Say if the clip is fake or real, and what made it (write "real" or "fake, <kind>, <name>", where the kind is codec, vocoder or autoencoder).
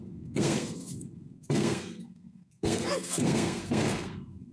fake, codec, SNAC